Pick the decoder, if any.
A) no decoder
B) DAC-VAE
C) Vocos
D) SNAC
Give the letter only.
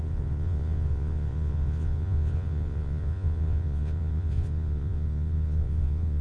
C